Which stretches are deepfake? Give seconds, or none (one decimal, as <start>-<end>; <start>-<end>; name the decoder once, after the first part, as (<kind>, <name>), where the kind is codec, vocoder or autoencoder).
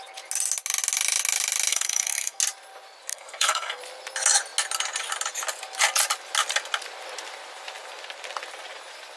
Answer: 1.7-2.4 (codec, SNAC); 3.1-3.8